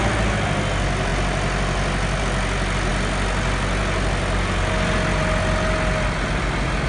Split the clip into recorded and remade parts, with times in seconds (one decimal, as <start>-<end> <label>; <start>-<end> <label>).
0.0-6.9 recorded

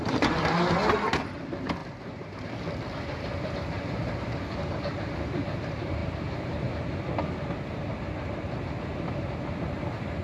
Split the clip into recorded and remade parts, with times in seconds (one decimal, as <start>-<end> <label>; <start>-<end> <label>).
0.0-10.2 recorded

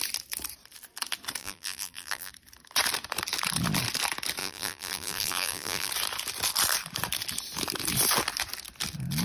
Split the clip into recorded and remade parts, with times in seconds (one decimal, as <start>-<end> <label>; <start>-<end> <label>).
0.0-1.4 recorded; 1.4-2.3 remade; 2.3-4.4 recorded; 4.4-5.9 remade; 5.9-9.2 recorded

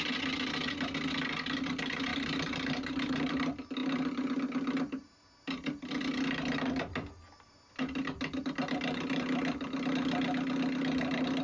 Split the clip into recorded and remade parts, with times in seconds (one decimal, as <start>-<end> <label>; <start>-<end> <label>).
0.0-2.1 recorded; 2.1-3.3 remade; 3.3-11.4 recorded

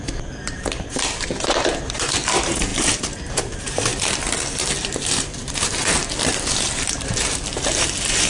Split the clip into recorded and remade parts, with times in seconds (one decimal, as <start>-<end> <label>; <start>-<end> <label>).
0.0-8.3 remade

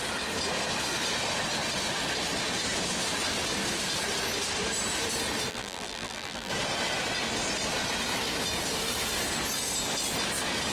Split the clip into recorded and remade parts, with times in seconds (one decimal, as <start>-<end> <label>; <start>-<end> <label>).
0.0-5.5 recorded; 5.5-6.5 remade; 6.5-10.7 recorded

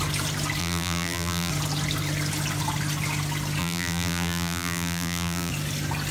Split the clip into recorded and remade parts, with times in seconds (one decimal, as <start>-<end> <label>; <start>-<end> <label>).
0.0-0.6 recorded; 0.6-1.5 remade; 1.5-3.6 recorded; 3.6-5.5 remade; 5.5-6.1 recorded